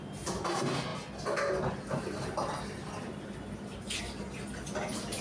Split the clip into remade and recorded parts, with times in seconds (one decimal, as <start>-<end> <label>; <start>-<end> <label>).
0.0-5.2 recorded